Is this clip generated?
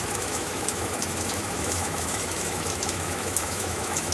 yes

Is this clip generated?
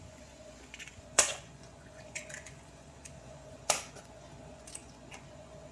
yes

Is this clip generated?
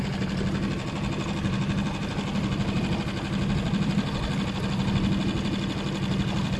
no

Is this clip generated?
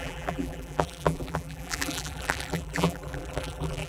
yes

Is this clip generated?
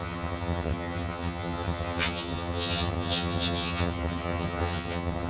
yes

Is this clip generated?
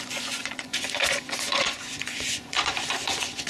yes